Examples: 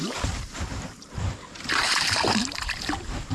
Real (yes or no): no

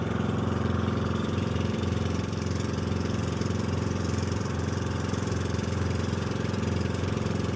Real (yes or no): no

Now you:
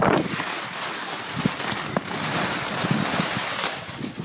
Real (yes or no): yes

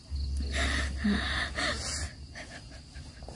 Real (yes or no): yes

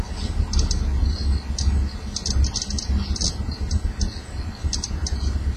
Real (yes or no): yes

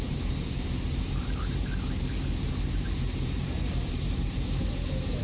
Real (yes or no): no